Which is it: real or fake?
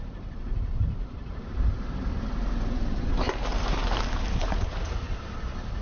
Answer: fake